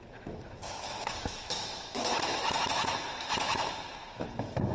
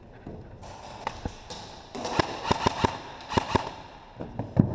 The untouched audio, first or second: second